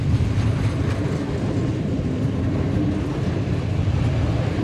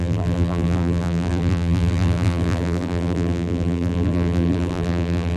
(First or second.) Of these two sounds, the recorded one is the first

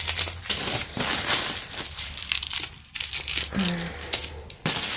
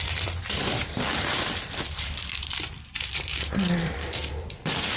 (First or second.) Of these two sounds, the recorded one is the first